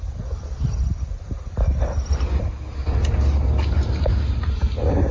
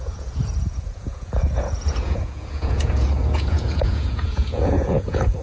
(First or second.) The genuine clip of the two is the first